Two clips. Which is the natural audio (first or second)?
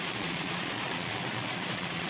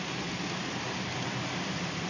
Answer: second